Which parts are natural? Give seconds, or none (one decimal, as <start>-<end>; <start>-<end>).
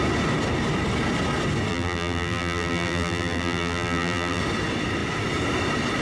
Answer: 0.0-1.7; 4.4-6.0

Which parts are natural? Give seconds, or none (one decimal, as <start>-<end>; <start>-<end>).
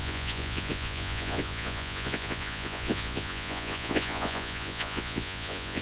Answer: none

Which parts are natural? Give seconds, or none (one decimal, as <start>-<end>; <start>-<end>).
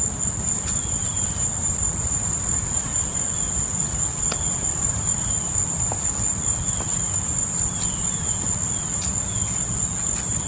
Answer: 0.0-1.6; 3.2-4.1; 5.5-10.5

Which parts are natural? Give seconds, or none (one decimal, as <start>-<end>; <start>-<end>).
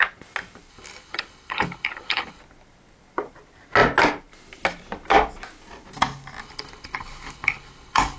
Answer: 0.0-0.7; 2.4-6.4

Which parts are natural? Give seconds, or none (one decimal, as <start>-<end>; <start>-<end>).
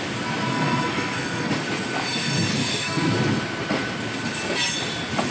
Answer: 0.0-0.5; 1.5-2.5; 3.0-5.3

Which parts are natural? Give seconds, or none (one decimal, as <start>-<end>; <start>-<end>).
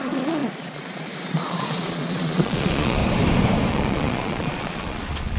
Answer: 3.0-3.7